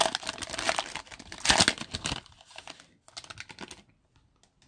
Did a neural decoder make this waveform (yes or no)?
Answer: no